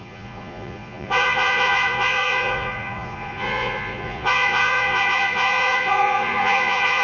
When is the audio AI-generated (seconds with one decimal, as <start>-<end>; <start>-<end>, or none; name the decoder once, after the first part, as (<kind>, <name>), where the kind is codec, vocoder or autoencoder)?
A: 0.0-7.0 (vocoder, Vocos)